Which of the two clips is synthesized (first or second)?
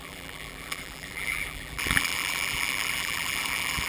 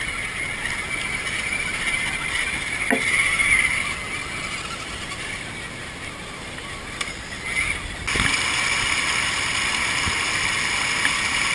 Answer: first